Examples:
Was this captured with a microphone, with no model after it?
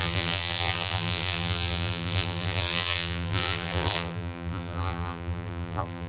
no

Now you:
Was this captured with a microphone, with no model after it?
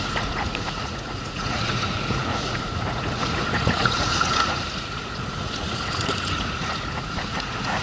no